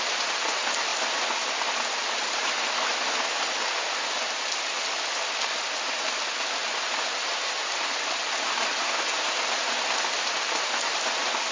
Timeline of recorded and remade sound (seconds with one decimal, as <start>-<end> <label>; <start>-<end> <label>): 0.0-11.5 recorded